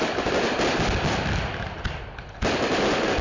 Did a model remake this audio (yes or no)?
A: no